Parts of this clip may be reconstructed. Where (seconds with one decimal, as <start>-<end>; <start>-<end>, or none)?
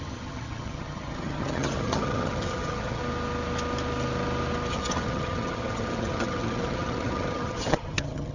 0.0-3.0; 4.7-8.3